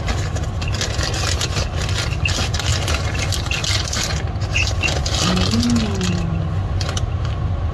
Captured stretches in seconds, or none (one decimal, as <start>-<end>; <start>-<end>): 0.0-7.7